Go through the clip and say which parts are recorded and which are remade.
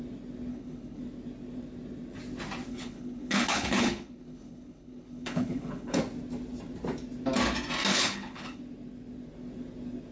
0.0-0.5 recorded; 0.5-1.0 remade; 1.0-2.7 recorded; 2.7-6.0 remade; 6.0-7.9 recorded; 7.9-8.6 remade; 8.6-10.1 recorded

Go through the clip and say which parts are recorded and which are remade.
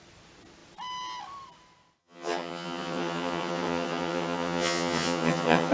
0.0-2.0 recorded; 2.0-5.7 remade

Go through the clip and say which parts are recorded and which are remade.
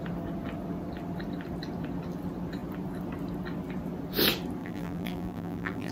0.0-4.6 recorded; 4.6-5.9 remade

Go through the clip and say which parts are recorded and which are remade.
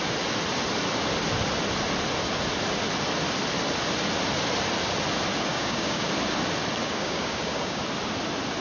0.0-5.5 recorded; 5.5-6.1 remade; 6.1-6.8 recorded; 6.8-7.8 remade; 7.8-8.6 recorded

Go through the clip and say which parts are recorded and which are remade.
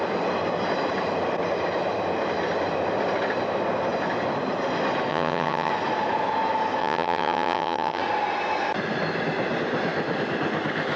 0.0-5.1 recorded; 5.1-5.7 remade; 5.7-6.8 recorded; 6.8-8.0 remade; 8.0-11.0 recorded